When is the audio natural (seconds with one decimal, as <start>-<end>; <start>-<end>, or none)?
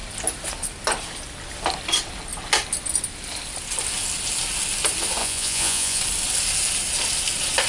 0.0-5.2; 6.0-7.7